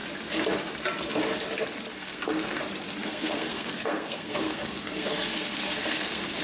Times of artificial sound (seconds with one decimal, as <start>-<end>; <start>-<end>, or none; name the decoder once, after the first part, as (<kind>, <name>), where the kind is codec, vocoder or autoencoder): 1.9-2.6 (codec, SNAC); 3.0-6.4